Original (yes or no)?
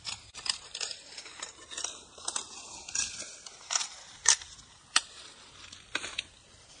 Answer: no